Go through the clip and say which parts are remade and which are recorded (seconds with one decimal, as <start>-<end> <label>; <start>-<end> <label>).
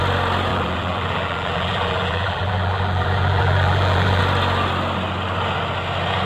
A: 0.0-0.5 recorded; 0.5-4.2 remade; 4.2-6.3 recorded